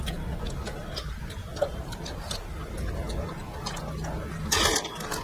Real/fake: real